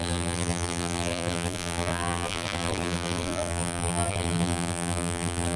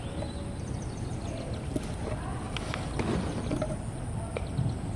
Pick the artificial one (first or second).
first